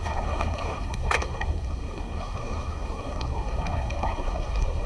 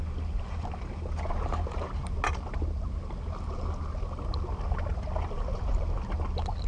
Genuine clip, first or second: second